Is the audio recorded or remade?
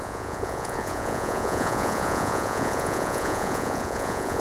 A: remade